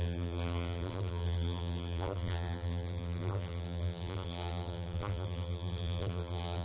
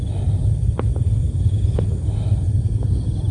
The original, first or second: second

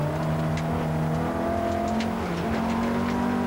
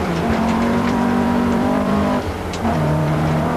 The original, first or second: first